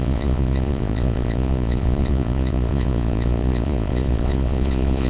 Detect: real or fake fake